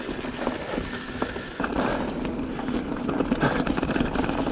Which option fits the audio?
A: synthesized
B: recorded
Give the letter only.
B